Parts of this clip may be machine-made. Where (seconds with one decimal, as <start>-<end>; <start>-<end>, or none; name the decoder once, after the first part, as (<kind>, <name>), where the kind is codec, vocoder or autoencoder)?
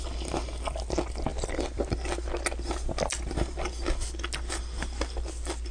none